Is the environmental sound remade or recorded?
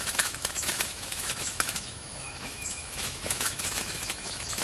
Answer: remade